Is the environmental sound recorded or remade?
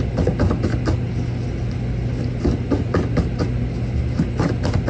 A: recorded